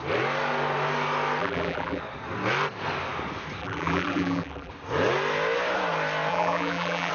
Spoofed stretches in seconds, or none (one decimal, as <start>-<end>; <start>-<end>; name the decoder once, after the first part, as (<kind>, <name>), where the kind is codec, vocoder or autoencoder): 1.4-2.0 (vocoder, BigVGAN v2); 3.6-4.7; 6.3-7.1